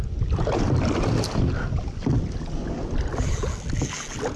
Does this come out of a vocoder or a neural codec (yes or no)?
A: no